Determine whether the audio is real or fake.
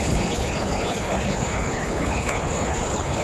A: fake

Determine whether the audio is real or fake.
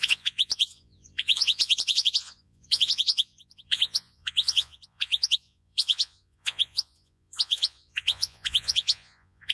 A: fake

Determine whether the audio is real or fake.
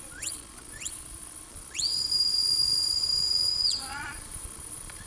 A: fake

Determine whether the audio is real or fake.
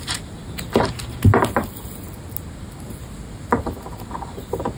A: real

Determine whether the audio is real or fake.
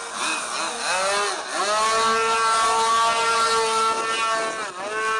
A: real